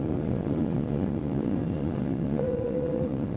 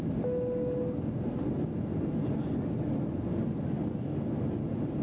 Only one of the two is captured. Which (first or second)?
second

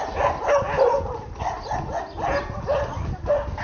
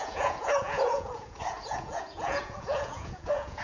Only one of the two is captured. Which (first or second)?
first